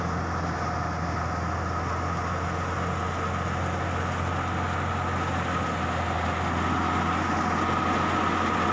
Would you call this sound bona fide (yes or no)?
yes